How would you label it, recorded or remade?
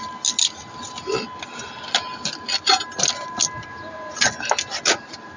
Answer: recorded